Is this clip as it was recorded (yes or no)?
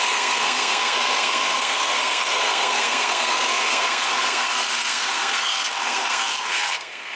no